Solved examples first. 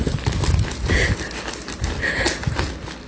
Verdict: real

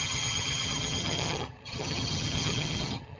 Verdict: fake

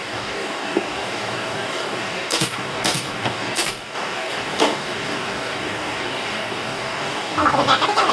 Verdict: fake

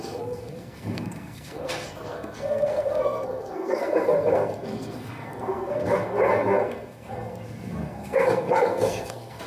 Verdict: fake